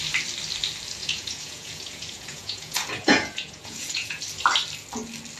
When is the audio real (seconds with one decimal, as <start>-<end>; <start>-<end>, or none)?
0.0-1.0; 4.2-5.4